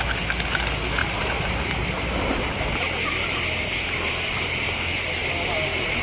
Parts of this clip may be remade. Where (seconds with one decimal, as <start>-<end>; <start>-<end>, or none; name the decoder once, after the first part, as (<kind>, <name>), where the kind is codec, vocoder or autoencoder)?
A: 1.0-2.4 (vocoder, BigVGAN v2); 3.2-6.0